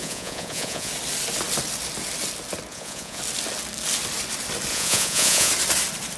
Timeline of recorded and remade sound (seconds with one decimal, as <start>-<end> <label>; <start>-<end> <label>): 0.0-0.9 remade; 0.9-2.7 recorded; 2.7-3.2 remade; 3.2-4.7 recorded; 4.7-5.5 remade; 5.5-6.2 recorded